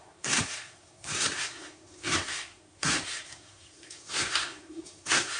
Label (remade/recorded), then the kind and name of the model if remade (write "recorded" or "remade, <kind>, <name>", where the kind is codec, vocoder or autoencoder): remade, codec, SNAC